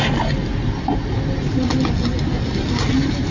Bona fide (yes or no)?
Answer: yes